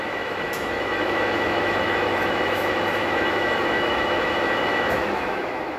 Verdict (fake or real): fake